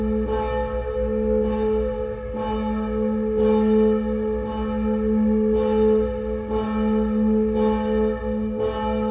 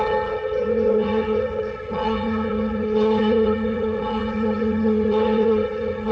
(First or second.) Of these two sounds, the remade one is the second